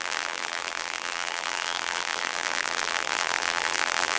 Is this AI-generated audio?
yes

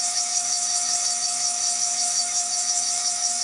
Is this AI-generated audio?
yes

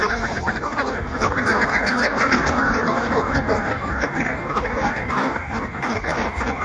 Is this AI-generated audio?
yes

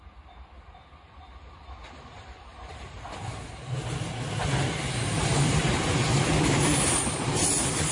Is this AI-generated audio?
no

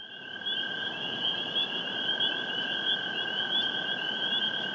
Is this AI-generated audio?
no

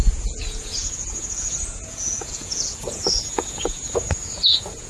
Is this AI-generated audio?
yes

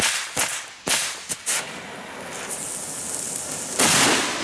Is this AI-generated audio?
no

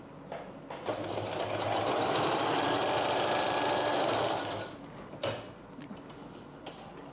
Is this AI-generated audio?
no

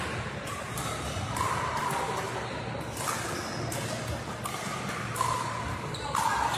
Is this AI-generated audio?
no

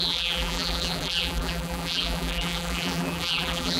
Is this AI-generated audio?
yes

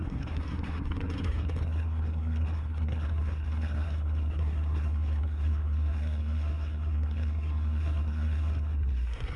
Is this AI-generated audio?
yes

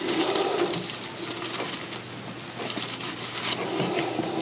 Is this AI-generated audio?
no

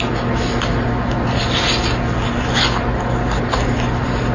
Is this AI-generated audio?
no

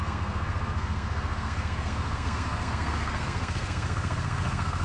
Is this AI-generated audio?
yes